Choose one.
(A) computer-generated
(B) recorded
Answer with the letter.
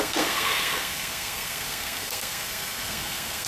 A